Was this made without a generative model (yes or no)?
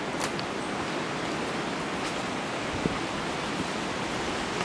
yes